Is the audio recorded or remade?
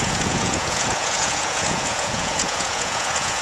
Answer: remade